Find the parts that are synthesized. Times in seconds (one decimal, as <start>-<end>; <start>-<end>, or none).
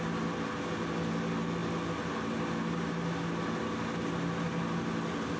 none